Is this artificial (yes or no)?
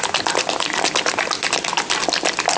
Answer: no